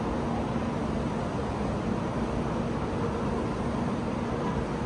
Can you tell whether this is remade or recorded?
recorded